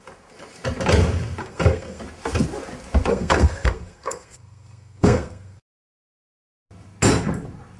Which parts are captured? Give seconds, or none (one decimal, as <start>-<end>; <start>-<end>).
0.0-1.4; 2.0-3.1; 5.6-7.8